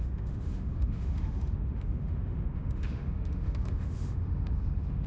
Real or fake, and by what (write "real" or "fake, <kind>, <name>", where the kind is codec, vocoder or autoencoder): fake, autoencoder, DAC-VAE